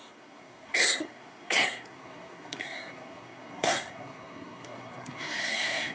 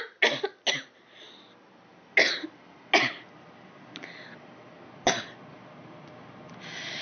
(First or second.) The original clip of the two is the second